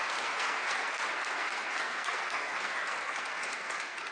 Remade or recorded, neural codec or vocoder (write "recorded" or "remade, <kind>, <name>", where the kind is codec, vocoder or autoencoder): remade, codec, SNAC